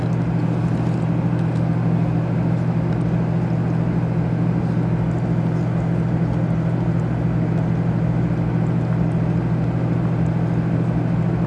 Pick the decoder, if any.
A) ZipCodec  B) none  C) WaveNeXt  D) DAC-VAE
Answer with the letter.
B